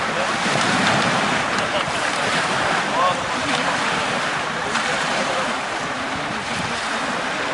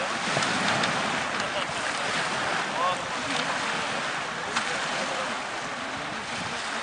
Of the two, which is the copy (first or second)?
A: first